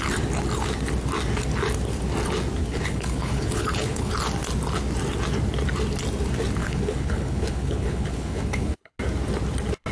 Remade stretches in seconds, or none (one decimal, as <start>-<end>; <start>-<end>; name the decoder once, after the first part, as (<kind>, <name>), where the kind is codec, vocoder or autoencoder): 2.6-4.1 (codec, HILCodec); 6.6-8.9